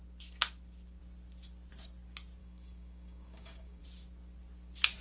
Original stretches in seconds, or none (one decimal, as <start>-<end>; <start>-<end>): 0.0-2.4; 3.8-5.0